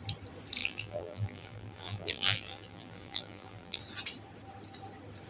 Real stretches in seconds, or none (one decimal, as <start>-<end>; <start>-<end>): 0.0-0.6; 3.8-5.3